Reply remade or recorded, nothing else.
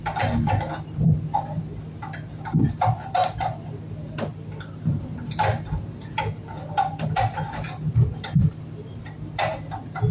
remade